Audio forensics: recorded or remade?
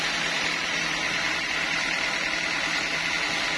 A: recorded